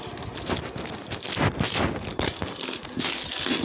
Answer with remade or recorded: recorded